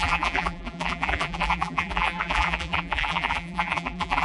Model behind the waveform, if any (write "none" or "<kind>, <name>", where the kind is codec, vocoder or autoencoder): vocoder, BigVGAN v2